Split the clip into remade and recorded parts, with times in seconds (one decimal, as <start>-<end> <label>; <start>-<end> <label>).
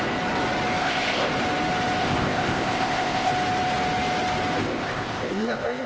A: 0.0-0.8 recorded; 0.8-1.3 remade; 1.3-2.0 recorded; 2.0-3.3 remade; 3.3-4.6 recorded; 4.6-5.9 remade